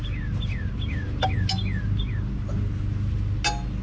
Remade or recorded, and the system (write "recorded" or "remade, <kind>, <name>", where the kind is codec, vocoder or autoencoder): recorded